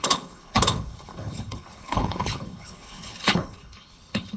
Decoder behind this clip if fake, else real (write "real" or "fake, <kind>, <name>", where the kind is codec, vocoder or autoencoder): fake, codec, HILCodec